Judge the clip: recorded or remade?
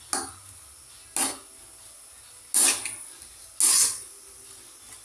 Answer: recorded